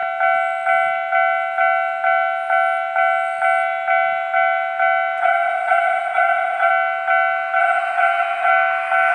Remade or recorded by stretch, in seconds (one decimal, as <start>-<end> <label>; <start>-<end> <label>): 0.0-5.2 recorded; 5.2-6.7 remade; 6.7-7.6 recorded; 7.6-8.5 remade; 8.5-9.1 recorded